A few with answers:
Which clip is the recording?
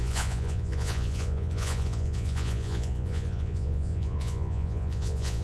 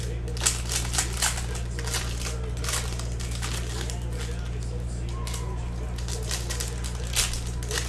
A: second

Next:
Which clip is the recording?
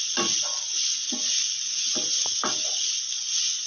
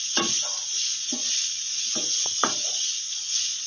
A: first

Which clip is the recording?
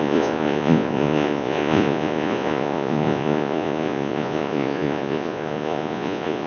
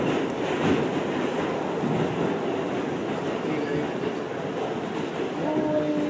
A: second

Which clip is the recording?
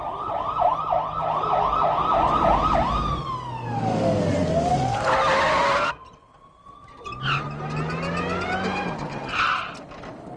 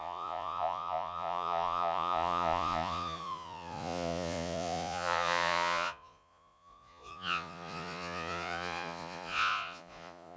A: first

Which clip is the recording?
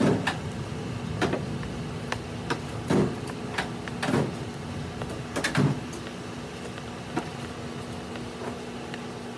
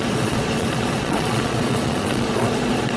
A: first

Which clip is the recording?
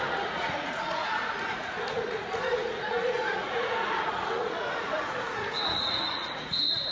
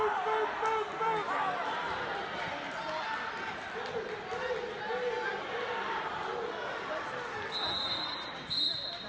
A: second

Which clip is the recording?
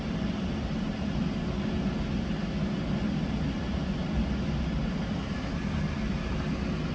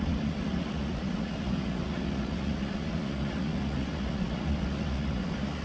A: first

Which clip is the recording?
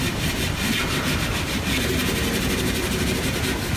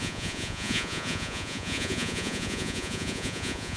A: first